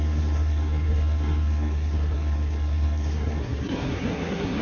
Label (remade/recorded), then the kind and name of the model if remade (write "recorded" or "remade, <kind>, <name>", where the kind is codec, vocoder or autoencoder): remade, codec, SNAC